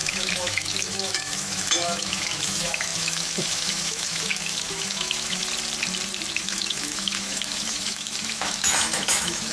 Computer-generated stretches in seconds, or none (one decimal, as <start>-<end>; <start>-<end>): 0.0-5.4; 6.3-9.5